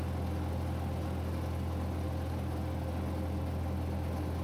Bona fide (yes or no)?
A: yes